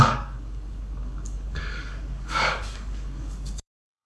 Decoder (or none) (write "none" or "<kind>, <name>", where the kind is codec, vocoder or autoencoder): codec, DAC